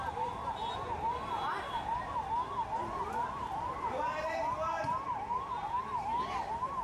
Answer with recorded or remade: recorded